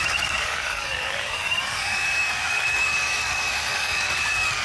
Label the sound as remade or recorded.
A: remade